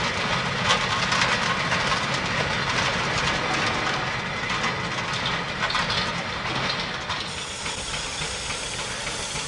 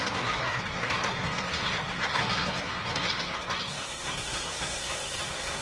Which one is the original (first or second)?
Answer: first